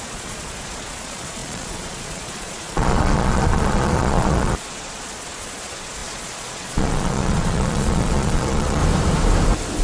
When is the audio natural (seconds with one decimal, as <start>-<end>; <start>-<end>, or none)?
8.8-9.8